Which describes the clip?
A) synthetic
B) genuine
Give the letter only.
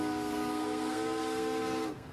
A